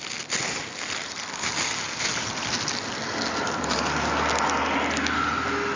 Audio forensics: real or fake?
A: real